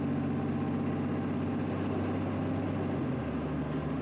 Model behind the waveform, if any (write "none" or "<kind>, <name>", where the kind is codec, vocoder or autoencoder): none